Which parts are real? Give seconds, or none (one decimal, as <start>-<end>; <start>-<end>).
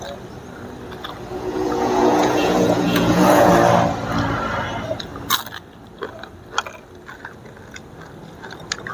0.0-1.3; 3.5-8.9